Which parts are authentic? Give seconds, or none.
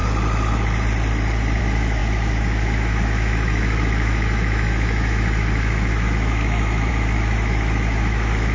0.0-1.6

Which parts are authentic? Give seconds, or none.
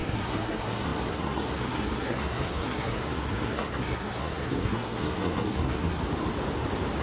6.0-7.0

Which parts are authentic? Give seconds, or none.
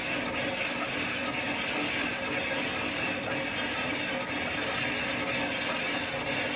0.0-6.6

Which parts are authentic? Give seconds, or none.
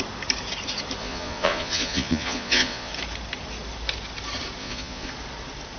0.0-1.0; 2.9-4.6; 5.1-5.8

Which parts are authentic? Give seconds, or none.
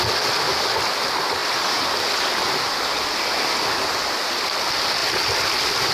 0.0-1.4; 3.4-5.0